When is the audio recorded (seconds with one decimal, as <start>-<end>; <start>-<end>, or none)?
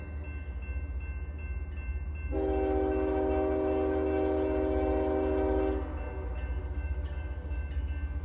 0.0-6.6; 7.7-8.2